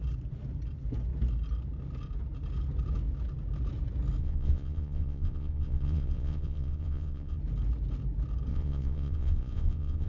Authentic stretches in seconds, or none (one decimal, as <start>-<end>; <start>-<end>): 0.0-4.2; 7.4-8.5